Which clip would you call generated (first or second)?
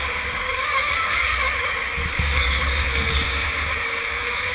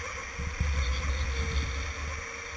first